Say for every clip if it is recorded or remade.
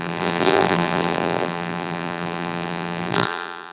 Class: remade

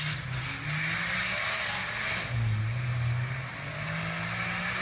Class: recorded